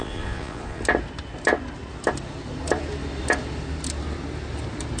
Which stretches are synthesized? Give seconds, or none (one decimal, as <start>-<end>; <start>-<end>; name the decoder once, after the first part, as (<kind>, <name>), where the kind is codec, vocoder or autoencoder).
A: 0.0-0.8 (vocoder, Vocos)